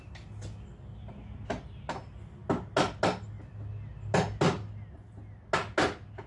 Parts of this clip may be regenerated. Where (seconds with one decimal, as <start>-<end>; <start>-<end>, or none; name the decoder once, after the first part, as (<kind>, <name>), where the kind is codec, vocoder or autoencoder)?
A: none